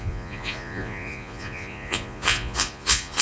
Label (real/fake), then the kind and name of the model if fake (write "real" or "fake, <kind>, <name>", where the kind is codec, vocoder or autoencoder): fake, vocoder, Vocos